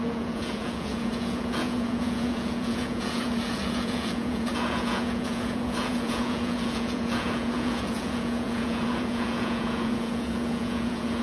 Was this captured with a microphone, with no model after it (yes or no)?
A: no